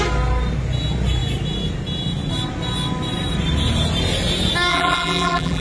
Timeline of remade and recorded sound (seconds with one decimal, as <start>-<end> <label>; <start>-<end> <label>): 0.0-4.7 recorded; 4.7-5.6 remade